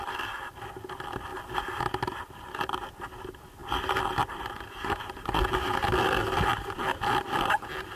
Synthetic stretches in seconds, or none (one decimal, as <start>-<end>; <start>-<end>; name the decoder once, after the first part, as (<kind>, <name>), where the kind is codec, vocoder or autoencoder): none

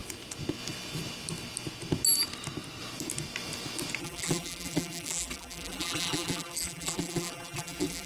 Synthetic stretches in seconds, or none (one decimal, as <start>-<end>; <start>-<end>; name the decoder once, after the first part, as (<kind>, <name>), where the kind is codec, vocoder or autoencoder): 4.0-8.1 (vocoder, BigVGAN v2)

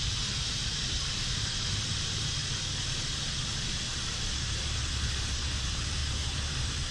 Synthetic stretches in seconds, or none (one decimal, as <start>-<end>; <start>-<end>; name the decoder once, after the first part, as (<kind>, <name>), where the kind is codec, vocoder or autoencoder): 0.0-2.4 (vocoder, BigVGAN v2); 3.4-6.9